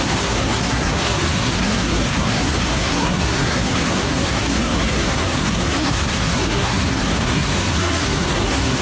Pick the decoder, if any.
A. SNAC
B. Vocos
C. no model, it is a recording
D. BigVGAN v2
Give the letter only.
A